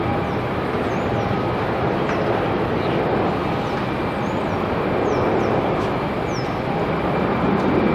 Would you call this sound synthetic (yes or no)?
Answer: no